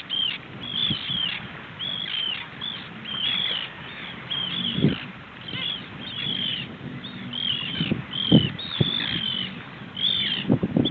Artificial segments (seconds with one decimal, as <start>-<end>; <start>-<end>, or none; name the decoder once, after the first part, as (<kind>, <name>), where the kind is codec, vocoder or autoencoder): none